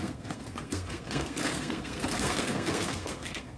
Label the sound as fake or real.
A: fake